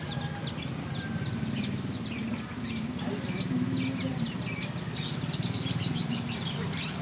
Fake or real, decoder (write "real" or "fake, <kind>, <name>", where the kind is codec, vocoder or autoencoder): real